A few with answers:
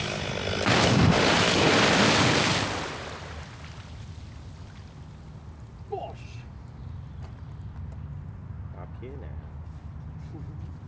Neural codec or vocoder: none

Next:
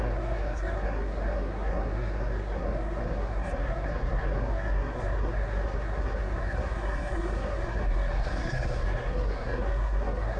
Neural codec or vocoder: codec, SNAC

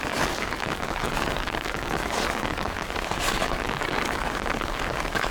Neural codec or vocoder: codec, DAC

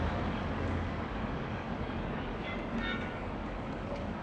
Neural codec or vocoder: codec, DAC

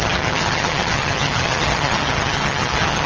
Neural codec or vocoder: vocoder, HiFi-GAN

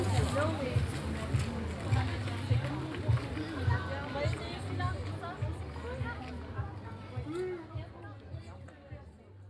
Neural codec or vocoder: none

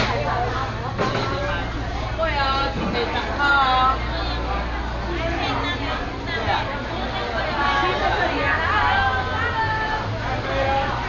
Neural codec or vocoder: none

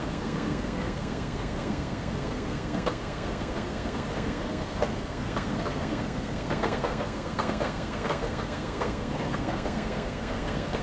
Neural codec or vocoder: codec, SNAC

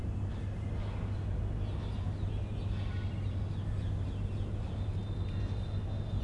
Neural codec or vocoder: none